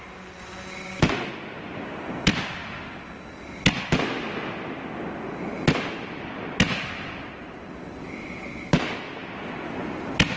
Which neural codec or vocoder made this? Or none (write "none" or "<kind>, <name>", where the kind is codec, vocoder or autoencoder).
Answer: none